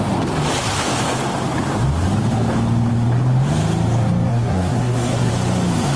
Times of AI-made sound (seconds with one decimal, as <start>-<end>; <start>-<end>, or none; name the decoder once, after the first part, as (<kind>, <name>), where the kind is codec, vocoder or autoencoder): 4.3-5.3 (codec, SNAC)